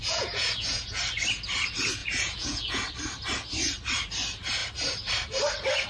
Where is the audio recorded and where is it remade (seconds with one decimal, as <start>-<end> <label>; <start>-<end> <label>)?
0.0-1.0 remade; 1.0-2.0 recorded; 2.0-2.8 remade; 2.8-5.9 recorded